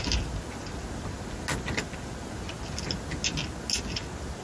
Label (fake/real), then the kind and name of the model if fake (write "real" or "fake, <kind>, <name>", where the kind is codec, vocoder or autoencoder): real